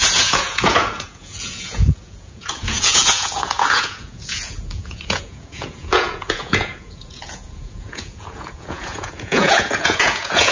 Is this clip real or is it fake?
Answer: fake